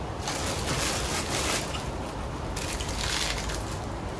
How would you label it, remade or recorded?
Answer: recorded